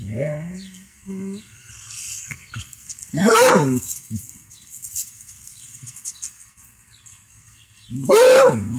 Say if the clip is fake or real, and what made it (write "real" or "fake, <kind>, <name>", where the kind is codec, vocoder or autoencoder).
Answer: fake, codec, SNAC